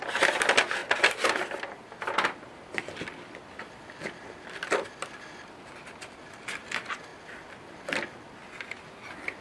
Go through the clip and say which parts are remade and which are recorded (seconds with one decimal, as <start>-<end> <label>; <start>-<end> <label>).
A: 0.0-9.4 recorded